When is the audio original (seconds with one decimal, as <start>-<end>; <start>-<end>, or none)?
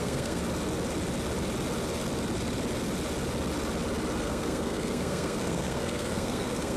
0.4-4.2